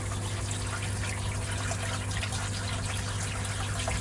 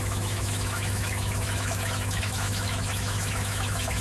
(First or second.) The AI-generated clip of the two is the second